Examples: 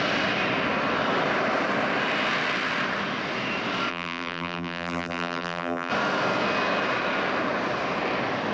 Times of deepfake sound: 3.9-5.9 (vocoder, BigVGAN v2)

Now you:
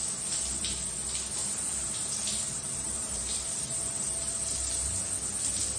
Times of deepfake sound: 1.4-4.9 (vocoder, BigVGAN v2)